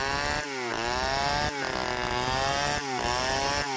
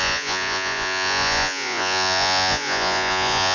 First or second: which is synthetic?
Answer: second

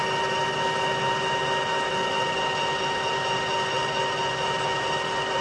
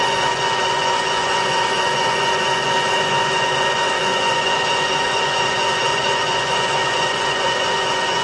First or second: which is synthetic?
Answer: second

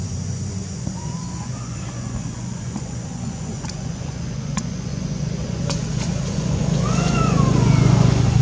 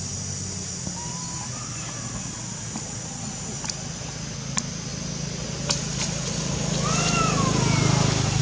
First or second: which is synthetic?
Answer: first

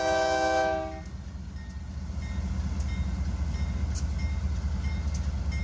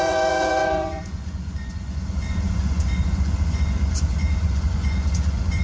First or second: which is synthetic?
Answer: second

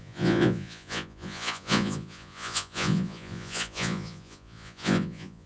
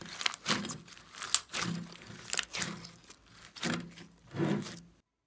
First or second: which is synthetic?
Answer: first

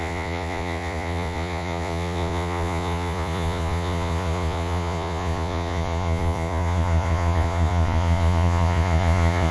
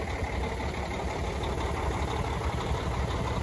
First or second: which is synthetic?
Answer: first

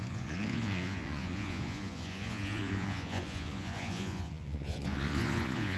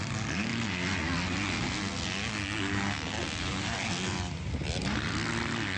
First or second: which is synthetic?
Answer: first